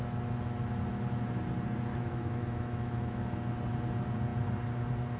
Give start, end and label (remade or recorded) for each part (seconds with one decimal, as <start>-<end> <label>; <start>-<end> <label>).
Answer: 0.0-1.9 recorded; 1.9-3.3 remade; 3.3-5.2 recorded